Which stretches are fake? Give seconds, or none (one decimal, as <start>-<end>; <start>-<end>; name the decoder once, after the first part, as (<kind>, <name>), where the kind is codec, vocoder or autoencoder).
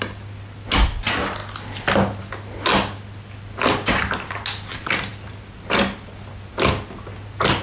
none